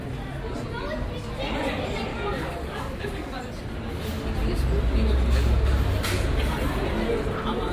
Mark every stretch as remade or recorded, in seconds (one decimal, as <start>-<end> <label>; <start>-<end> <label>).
0.0-2.1 recorded; 2.1-3.4 remade; 3.4-7.7 recorded